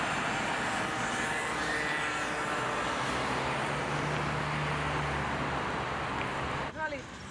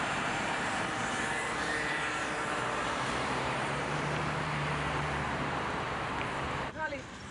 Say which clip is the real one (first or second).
first